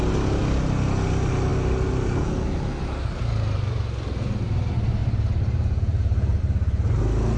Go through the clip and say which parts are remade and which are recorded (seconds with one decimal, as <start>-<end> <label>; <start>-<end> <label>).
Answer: 0.0-5.0 recorded; 5.0-6.4 remade; 6.4-7.4 recorded